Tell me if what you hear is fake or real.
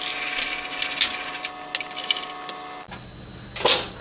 real